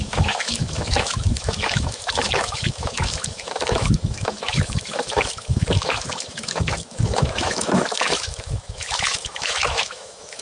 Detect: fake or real fake